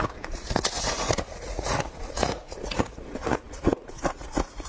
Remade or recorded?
remade